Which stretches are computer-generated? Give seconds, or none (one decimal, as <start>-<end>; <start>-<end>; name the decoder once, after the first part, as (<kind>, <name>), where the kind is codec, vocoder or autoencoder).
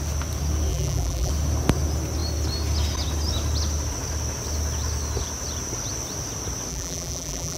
0.7-1.3 (vocoder, BigVGAN v2); 6.7-7.6